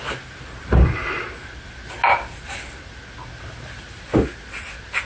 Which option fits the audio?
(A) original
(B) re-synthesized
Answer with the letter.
A